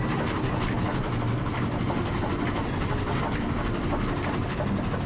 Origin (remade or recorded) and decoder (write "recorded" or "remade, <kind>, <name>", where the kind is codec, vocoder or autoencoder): recorded